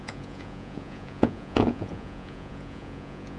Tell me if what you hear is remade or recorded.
remade